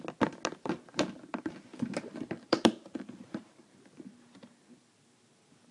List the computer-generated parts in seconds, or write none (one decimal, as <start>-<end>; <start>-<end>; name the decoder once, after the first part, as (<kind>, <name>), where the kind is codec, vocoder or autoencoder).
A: 1.7-3.7 (vocoder, BigVGAN v2)